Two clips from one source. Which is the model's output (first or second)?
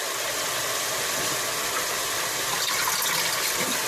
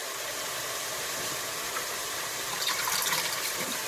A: second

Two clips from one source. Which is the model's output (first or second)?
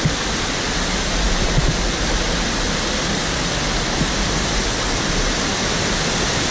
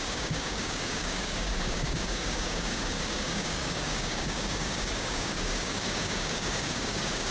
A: second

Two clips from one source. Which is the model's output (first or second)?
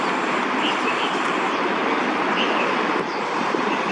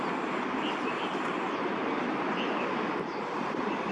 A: first